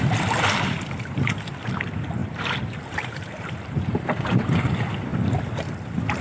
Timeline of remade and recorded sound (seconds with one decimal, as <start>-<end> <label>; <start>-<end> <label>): 0.0-2.2 recorded; 2.2-4.6 remade; 4.6-6.2 recorded